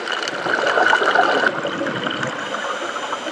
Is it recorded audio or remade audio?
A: recorded